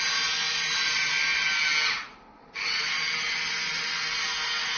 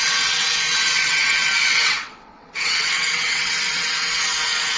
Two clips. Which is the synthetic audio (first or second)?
second